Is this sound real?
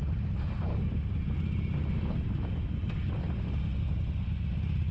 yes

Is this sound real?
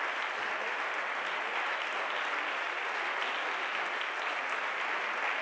yes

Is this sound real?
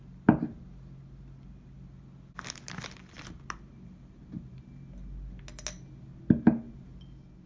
yes